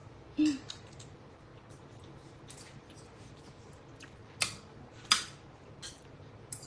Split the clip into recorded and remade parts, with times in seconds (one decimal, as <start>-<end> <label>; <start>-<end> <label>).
0.0-6.7 recorded